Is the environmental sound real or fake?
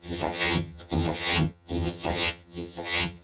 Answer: fake